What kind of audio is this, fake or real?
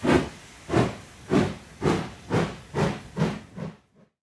real